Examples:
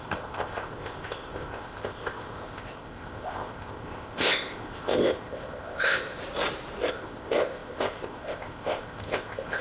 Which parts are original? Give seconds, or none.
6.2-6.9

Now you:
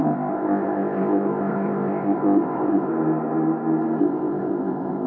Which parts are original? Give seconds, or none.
2.9-4.0

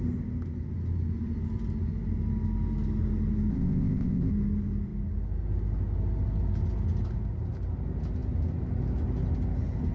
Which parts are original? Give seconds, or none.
0.0-3.5; 4.3-9.9